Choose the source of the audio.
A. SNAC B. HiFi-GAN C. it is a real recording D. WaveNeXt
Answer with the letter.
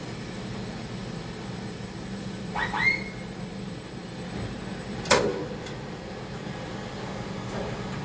C